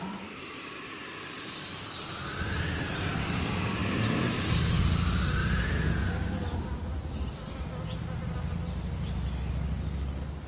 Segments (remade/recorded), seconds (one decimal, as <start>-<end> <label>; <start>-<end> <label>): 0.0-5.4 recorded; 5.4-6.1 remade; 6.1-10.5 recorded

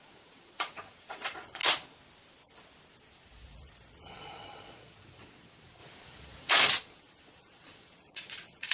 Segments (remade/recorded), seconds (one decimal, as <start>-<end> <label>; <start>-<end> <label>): 0.0-1.6 remade; 1.6-3.0 recorded; 3.0-8.7 remade

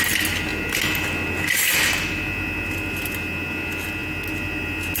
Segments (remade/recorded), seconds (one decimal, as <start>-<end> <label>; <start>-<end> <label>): 0.0-5.0 recorded

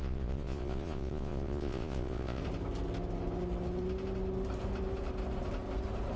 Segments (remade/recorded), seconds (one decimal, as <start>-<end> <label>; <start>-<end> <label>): 0.0-2.4 remade; 2.4-6.2 recorded

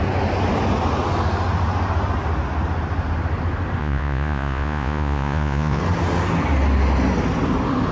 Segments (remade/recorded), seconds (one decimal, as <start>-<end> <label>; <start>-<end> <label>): 0.0-3.8 recorded; 3.8-5.8 remade; 5.8-7.9 recorded

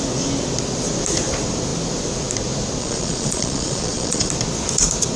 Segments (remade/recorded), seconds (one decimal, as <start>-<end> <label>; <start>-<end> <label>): 0.0-2.8 recorded; 2.8-4.3 remade; 4.3-5.2 recorded

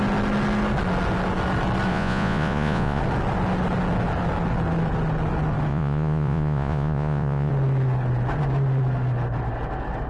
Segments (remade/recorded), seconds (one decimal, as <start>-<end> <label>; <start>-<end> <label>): 0.0-1.9 recorded; 1.9-3.0 remade; 3.0-5.7 recorded; 5.7-7.5 remade; 7.5-10.1 recorded